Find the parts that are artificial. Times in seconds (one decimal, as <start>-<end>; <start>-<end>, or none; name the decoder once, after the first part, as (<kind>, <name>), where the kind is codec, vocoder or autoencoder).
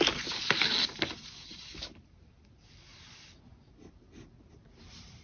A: none